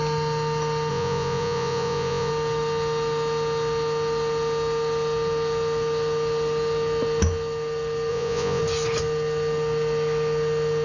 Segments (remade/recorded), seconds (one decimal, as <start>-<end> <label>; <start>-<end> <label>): 0.0-0.9 recorded; 0.9-2.3 remade; 2.3-8.1 recorded; 8.1-8.6 remade; 8.6-10.8 recorded

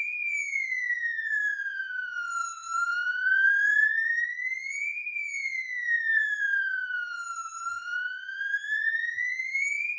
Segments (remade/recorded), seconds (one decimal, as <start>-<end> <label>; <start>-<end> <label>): 0.0-4.1 remade; 4.1-4.7 recorded; 4.7-10.0 remade